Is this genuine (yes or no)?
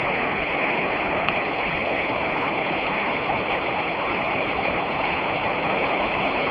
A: no